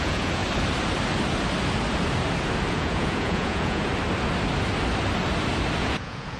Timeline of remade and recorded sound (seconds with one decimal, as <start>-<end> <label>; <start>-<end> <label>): 0.0-0.4 remade; 0.4-2.7 recorded; 2.7-3.9 remade; 3.9-5.8 recorded; 5.8-6.4 remade